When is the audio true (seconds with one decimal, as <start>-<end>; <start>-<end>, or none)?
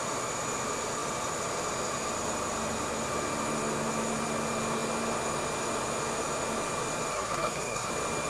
0.0-7.1; 7.9-8.3